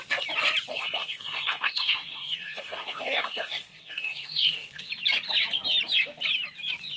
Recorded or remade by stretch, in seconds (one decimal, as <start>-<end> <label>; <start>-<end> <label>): 0.0-0.7 recorded; 0.7-4.9 remade; 4.9-7.0 recorded